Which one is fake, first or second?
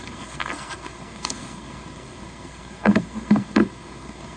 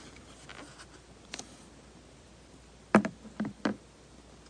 first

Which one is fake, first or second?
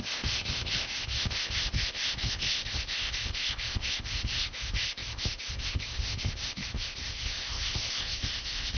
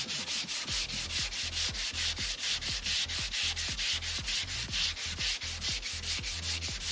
first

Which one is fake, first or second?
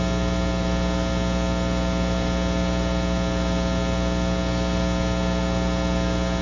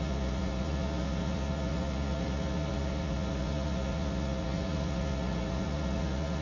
second